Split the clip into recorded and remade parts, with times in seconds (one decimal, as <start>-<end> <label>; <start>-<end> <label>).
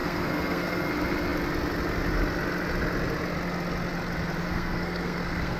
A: 0.0-0.9 remade; 0.9-4.4 recorded; 4.4-5.6 remade